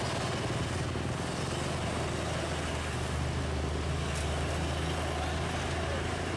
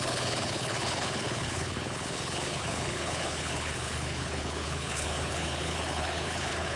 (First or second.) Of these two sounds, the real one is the first